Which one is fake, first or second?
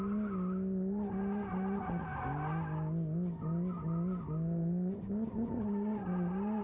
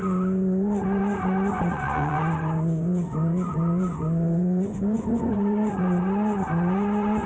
second